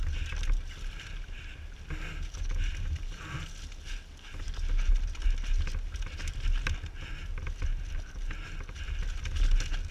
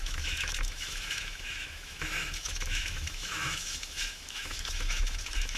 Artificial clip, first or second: second